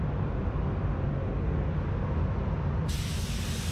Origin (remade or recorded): recorded